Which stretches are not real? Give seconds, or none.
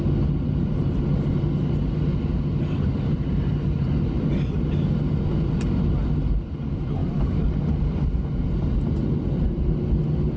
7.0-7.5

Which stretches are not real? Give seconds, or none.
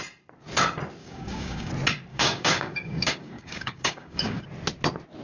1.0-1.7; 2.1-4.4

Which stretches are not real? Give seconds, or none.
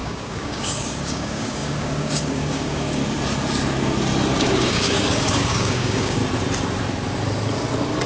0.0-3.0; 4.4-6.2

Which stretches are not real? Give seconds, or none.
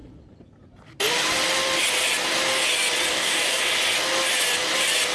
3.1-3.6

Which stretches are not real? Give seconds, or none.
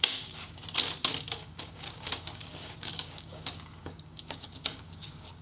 0.0-0.6; 1.3-5.4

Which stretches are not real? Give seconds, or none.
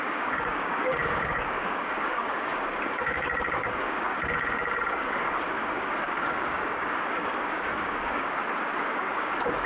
0.0-8.4; 8.9-9.7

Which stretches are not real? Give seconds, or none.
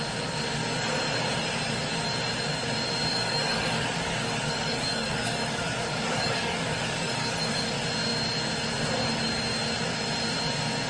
3.0-7.7